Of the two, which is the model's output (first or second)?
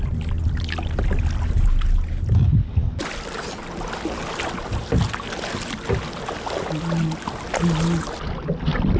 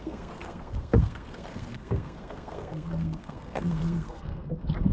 second